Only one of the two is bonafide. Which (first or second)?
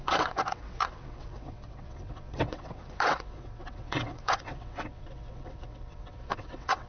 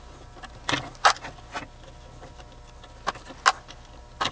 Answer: second